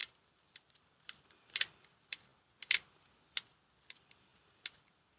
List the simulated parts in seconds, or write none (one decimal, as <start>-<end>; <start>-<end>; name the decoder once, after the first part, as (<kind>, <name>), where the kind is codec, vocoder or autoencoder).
0.0-2.3 (vocoder, BigVGAN v2); 3.8-4.3